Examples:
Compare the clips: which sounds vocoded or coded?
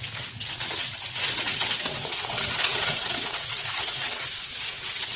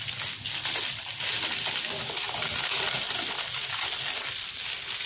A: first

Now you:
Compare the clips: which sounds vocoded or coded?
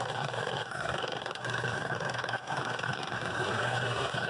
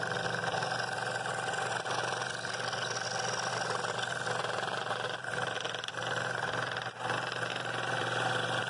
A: first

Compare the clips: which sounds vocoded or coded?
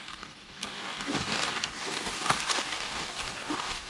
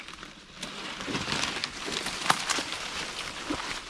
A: first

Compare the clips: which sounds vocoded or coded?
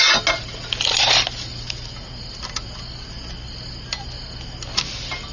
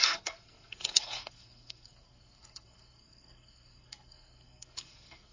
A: second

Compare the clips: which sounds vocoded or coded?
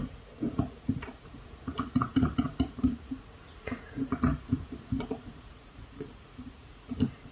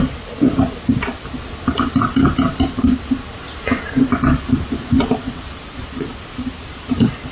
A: first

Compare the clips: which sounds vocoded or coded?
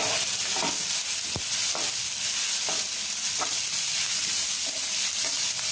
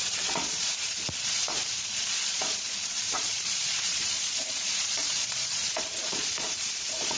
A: second